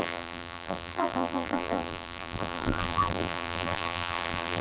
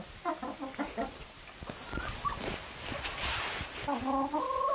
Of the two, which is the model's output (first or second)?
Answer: first